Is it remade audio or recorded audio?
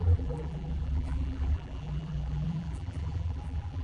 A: remade